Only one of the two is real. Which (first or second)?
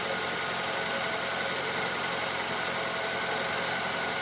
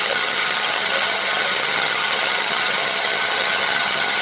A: first